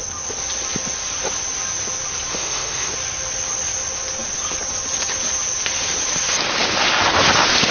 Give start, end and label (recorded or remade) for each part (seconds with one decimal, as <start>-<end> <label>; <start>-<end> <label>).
0.0-2.3 recorded; 2.3-2.9 remade; 2.9-7.7 recorded